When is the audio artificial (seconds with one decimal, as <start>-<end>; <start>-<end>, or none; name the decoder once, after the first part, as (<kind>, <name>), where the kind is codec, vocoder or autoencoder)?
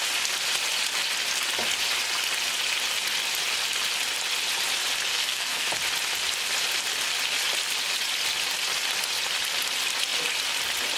5.1-5.7 (codec, SNAC)